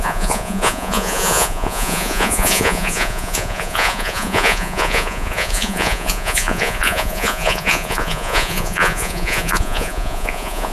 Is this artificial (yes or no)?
yes